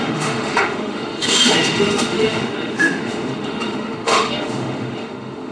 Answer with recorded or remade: remade